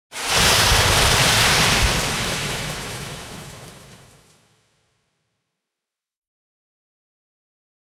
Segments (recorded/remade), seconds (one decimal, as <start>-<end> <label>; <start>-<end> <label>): 0.0-2.1 recorded; 2.1-7.9 remade